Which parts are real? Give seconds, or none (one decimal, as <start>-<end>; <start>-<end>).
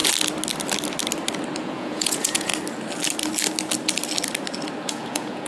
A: 0.0-1.6; 2.5-4.9